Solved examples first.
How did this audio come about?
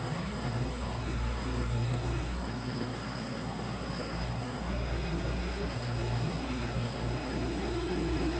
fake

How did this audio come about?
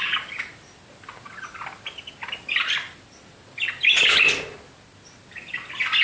real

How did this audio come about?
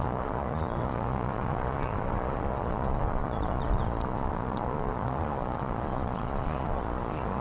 fake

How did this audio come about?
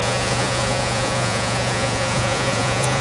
fake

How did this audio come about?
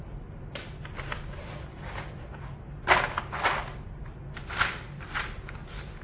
real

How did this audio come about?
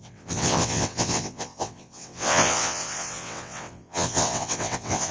fake